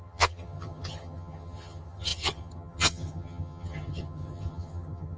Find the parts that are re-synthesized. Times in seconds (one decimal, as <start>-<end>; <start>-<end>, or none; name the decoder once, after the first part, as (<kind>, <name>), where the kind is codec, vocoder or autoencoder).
0.0-5.2 (vocoder, HiFi-GAN)